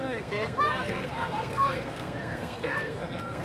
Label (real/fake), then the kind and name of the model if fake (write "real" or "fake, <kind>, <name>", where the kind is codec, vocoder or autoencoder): fake, codec, SNAC